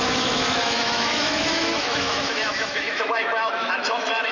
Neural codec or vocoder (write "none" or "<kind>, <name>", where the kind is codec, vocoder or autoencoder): autoencoder, DAC-VAE